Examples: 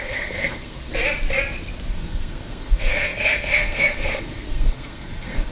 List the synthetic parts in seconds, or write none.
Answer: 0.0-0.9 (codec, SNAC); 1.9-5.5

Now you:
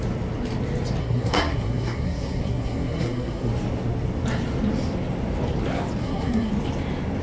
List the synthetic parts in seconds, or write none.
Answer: 1.0-3.5 (codec, SNAC); 6.0-6.5